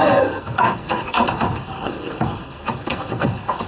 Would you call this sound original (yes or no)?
no